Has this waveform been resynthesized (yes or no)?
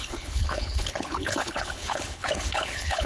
yes